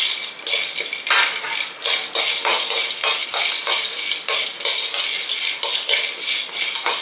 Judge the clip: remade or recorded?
recorded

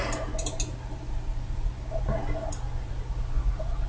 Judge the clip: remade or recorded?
recorded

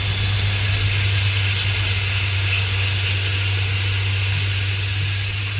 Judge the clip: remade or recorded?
recorded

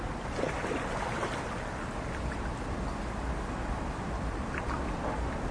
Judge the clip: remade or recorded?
recorded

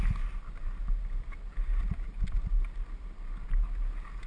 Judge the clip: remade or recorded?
recorded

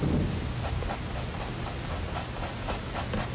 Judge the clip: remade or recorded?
recorded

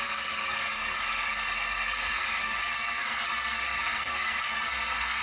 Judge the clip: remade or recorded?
remade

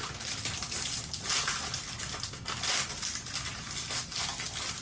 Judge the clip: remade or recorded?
recorded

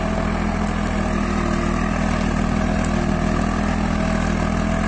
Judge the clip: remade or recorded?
recorded